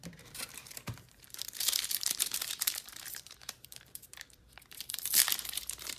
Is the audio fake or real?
fake